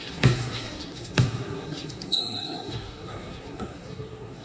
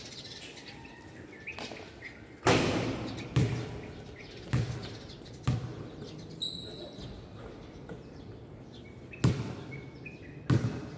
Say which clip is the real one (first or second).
second